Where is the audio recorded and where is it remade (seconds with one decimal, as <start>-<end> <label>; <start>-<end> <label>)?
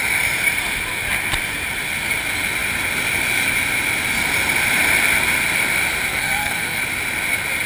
0.0-6.1 recorded; 6.1-6.8 remade; 6.8-7.7 recorded